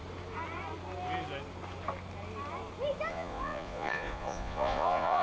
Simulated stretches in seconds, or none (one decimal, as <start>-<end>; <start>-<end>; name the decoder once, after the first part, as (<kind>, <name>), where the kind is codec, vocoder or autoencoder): 3.1-5.2 (vocoder, Vocos)

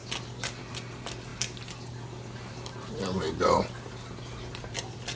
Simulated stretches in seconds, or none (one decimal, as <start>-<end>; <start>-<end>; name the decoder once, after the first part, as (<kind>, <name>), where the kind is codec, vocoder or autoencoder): none

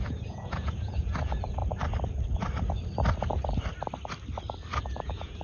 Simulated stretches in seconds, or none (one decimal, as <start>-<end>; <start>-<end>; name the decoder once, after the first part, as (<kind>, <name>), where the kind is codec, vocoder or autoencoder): 0.0-1.6 (vocoder, Vocos); 4.8-5.4

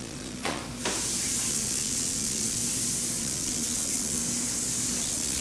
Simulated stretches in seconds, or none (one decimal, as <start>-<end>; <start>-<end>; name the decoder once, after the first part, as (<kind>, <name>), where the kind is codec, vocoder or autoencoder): 0.0-0.6 (vocoder, Vocos); 1.5-2.6; 3.2-4.2; 5.0-5.4

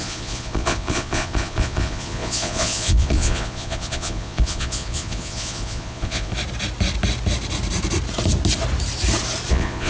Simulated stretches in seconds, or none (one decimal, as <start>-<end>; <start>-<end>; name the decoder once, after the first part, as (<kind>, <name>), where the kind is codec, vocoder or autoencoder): 0.0-6.3 (vocoder, Vocos); 9.5-9.9

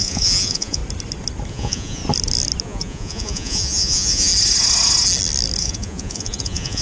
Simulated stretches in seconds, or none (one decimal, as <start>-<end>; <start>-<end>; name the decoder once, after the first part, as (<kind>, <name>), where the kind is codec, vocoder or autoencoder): 0.0-0.8 (vocoder, Vocos); 1.5-2.0; 2.6-4.3; 5.6-6.8

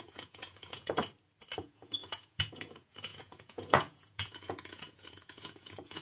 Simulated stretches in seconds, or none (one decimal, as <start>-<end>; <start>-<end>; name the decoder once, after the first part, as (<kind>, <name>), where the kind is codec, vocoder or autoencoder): 0.0-1.0 (vocoder, Vocos); 1.6-6.0

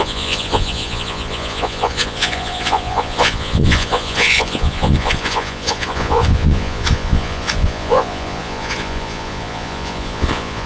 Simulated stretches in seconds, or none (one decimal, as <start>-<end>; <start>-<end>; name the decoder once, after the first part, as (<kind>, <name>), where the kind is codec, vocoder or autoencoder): 0.0-10.7 (vocoder, Vocos)